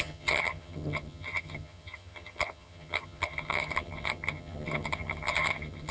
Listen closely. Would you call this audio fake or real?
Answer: fake